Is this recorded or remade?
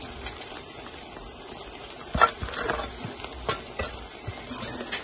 recorded